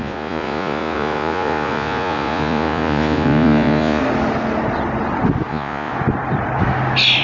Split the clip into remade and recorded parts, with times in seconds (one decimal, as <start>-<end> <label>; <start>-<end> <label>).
0.0-4.0 remade; 4.0-5.5 recorded; 5.5-5.9 remade; 5.9-7.2 recorded